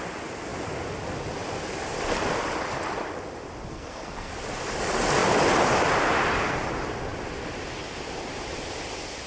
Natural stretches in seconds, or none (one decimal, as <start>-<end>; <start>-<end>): 0.0-3.7; 4.3-9.3